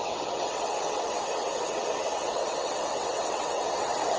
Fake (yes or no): yes